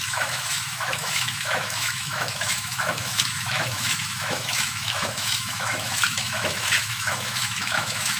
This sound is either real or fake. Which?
fake